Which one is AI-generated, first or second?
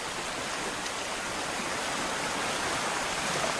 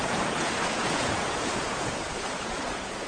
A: second